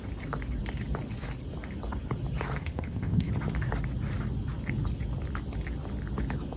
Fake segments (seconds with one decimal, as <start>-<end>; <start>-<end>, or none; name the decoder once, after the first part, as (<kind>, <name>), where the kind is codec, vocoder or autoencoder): 2.6-3.3 (codec, ZipCodec)